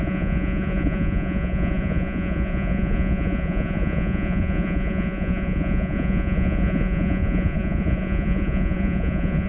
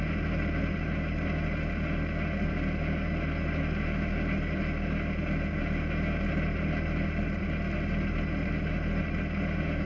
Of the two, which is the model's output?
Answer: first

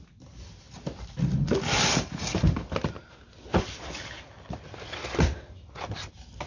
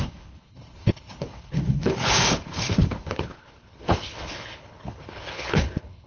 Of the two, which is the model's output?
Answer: second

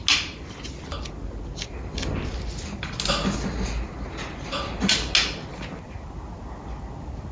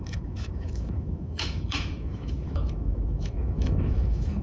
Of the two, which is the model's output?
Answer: second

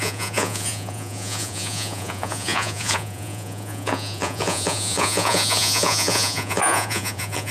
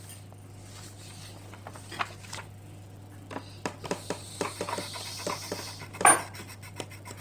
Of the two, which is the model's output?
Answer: first